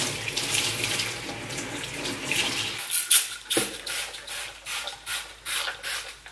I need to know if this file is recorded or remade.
recorded